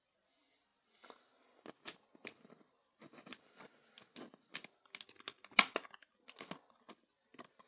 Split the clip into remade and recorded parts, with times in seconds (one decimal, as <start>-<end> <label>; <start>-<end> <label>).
0.0-7.7 recorded